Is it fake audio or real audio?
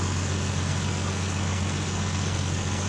fake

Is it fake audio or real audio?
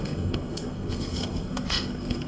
fake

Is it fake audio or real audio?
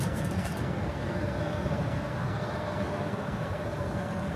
fake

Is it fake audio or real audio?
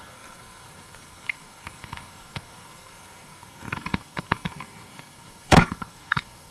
fake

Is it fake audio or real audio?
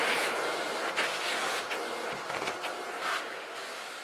real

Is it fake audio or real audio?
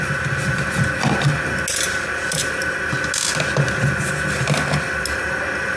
real